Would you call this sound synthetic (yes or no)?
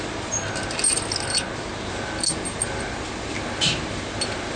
no